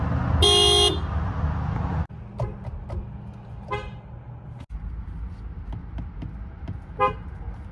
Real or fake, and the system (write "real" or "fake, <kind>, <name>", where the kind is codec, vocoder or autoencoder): real